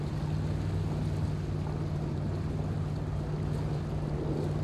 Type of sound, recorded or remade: recorded